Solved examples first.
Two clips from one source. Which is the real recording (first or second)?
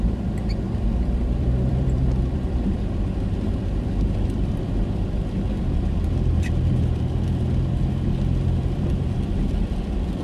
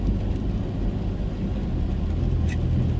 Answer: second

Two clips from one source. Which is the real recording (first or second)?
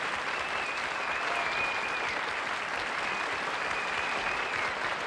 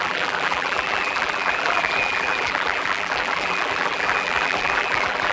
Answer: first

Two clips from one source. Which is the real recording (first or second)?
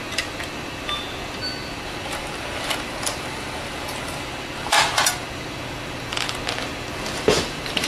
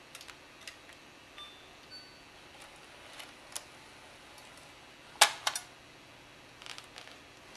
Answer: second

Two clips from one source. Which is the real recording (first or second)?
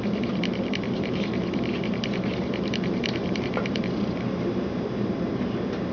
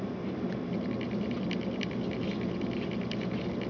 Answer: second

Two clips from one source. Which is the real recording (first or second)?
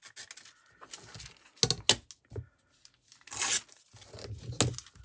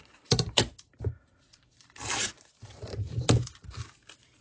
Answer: first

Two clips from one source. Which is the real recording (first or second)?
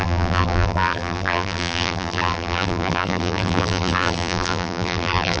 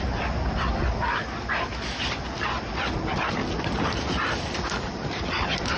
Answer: second